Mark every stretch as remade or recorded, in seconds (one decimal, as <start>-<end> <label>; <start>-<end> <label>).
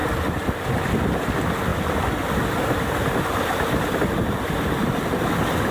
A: 0.0-5.7 recorded